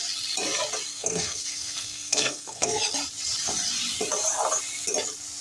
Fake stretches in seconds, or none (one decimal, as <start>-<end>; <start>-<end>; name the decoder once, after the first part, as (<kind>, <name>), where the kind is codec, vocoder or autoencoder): 0.9-2.8 (codec, SNAC)